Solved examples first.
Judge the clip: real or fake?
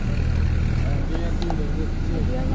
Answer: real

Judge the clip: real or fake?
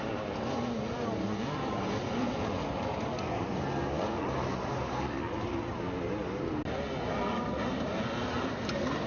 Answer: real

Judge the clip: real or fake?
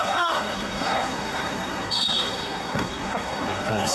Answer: fake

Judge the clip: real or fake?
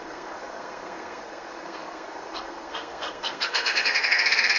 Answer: fake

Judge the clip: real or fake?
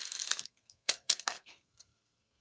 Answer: fake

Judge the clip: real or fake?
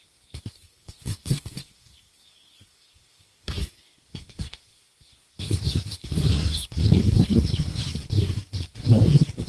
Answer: fake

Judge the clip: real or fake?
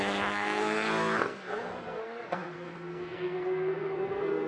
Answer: fake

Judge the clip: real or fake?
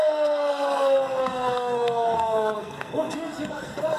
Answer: fake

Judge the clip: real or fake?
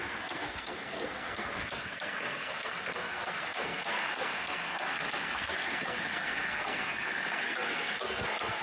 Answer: fake